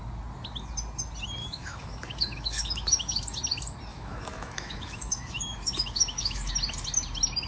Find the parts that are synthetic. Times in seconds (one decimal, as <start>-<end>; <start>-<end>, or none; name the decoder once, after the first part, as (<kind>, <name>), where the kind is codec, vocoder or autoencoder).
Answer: 1.4-3.2 (autoencoder, DAC-VAE); 3.9-6.5